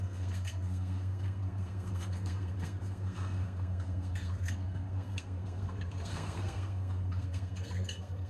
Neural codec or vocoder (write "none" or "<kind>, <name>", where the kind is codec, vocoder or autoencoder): codec, SNAC